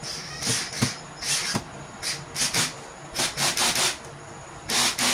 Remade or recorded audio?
recorded